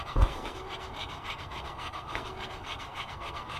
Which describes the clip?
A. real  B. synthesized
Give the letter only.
B